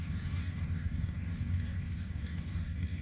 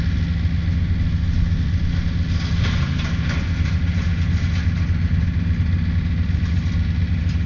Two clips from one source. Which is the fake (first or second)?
first